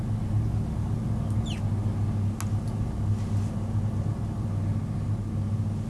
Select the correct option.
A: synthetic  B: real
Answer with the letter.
B